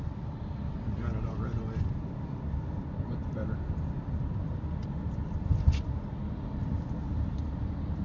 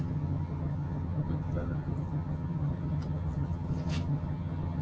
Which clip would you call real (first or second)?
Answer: first